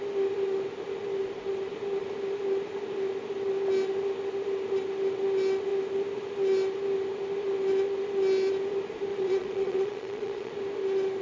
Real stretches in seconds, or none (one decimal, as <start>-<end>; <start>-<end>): 0.0-9.1; 10.5-11.2